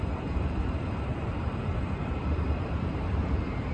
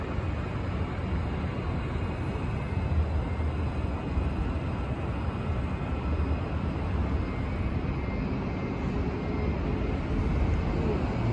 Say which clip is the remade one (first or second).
first